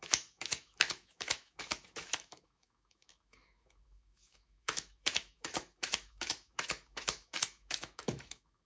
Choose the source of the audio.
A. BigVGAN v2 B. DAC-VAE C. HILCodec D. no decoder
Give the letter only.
B